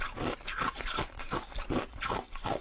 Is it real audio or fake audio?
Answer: real